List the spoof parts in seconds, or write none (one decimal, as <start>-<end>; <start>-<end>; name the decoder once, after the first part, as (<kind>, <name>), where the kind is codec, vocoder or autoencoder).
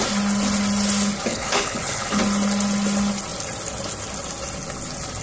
1.3-2.2 (codec, HILCodec)